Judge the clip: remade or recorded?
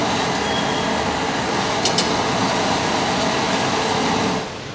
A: recorded